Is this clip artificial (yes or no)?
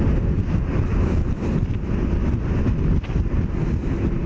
no